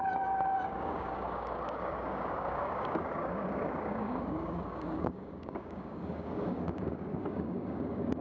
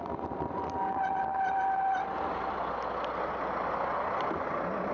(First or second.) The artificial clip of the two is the first